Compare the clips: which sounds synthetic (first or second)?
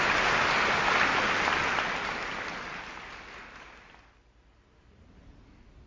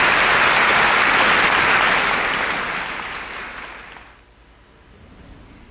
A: first